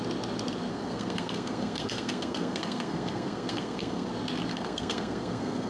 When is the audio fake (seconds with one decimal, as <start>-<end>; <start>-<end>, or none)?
0.7-4.1; 4.5-5.7